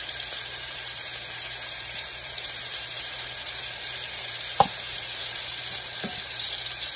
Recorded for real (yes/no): no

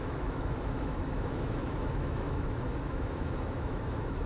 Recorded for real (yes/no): no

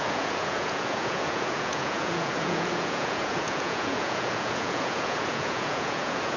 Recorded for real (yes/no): no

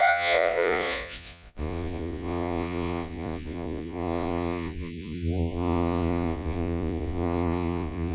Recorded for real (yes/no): no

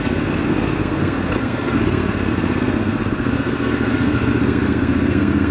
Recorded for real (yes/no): no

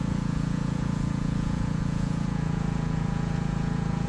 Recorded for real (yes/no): no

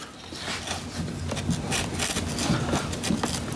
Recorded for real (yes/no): yes